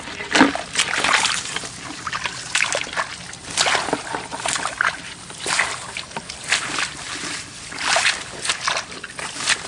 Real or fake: real